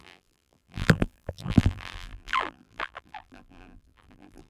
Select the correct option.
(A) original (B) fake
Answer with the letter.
B